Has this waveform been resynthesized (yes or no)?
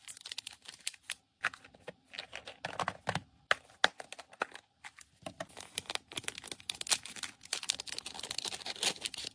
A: no